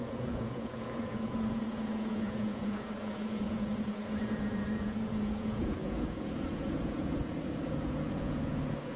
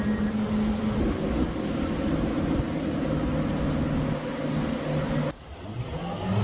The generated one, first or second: first